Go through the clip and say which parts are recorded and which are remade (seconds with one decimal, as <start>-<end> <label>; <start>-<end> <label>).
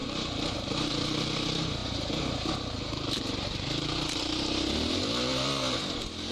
0.0-6.3 remade